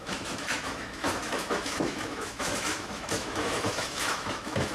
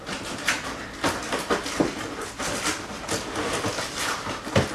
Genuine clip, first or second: second